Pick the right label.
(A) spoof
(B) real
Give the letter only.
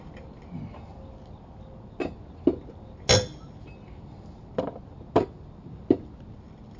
B